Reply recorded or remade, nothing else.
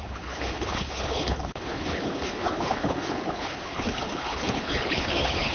remade